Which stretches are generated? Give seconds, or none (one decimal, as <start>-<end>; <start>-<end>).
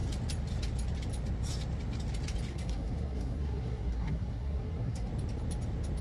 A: 2.5-5.1